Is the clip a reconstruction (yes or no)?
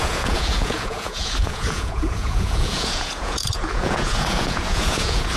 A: yes